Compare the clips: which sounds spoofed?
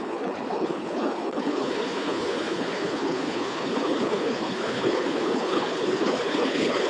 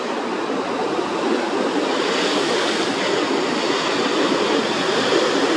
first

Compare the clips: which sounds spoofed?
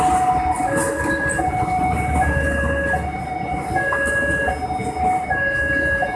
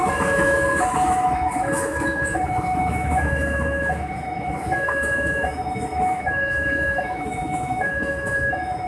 second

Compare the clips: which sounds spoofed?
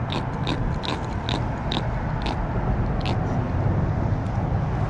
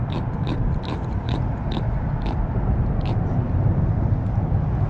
second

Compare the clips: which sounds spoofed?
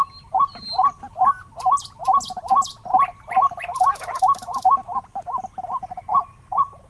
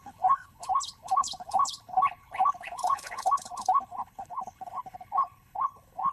second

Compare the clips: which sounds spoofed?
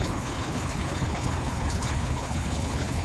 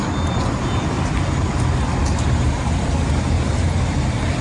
first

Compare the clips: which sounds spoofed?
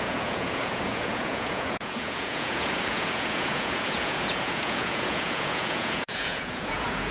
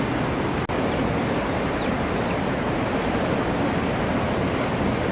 first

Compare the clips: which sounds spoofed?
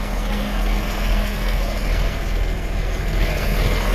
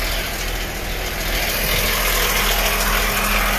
first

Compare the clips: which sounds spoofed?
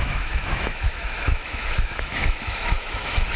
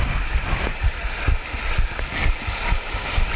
first